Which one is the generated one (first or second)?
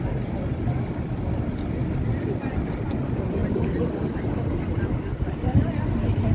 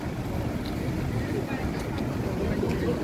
first